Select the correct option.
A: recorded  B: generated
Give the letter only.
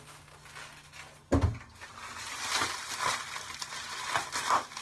A